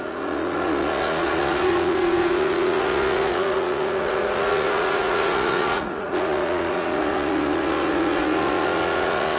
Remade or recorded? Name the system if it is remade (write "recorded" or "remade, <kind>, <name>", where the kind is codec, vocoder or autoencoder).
remade, vocoder, Vocos